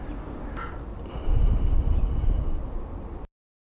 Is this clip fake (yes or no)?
no